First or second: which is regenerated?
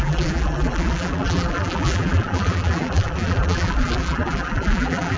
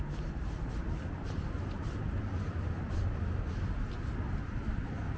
first